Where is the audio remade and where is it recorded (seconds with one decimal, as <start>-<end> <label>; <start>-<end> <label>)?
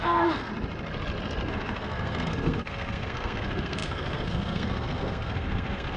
0.0-0.5 remade; 0.5-1.5 recorded; 1.5-6.0 remade